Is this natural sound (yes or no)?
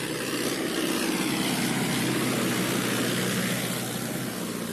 yes